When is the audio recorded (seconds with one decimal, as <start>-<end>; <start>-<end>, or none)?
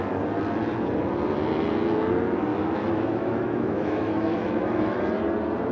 0.0-2.5; 5.0-5.7